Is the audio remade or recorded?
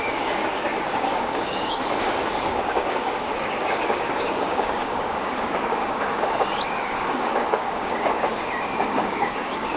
remade